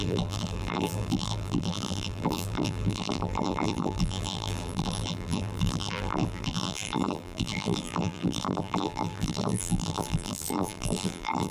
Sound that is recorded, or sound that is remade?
remade